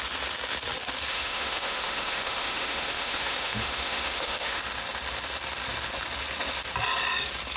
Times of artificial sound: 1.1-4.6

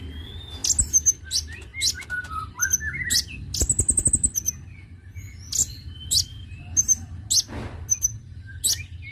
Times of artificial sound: none